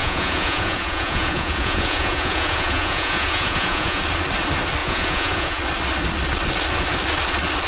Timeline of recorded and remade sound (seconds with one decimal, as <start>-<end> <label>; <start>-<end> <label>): 0.0-4.0 remade; 4.0-4.8 recorded; 4.8-5.6 remade; 5.6-7.7 recorded